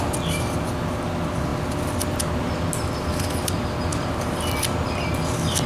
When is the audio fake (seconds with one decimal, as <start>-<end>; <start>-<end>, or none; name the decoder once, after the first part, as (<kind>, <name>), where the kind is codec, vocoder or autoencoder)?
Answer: none